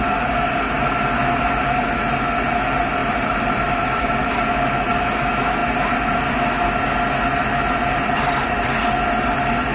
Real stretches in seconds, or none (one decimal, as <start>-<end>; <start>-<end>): 0.0-3.0; 4.3-9.7